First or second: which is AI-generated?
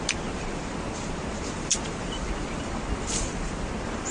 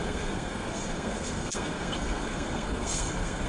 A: second